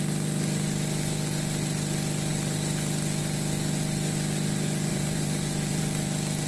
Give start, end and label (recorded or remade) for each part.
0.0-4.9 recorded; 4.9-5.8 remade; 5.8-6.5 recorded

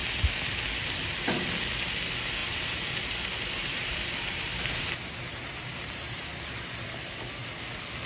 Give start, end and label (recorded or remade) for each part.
0.0-2.4 recorded; 2.4-6.7 remade; 6.7-8.1 recorded

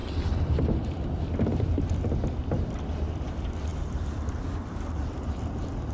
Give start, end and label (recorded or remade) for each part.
0.0-5.9 recorded

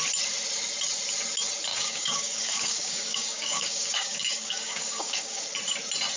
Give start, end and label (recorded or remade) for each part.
0.0-1.7 recorded; 1.7-5.4 remade; 5.4-6.2 recorded

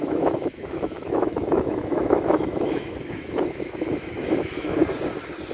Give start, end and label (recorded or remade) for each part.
0.0-4.8 remade; 4.8-5.5 recorded

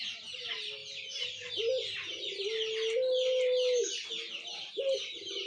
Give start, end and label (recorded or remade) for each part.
0.0-5.5 recorded

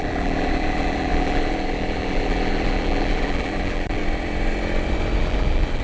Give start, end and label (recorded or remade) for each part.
0.0-4.0 remade; 4.0-5.2 recorded; 5.2-5.8 remade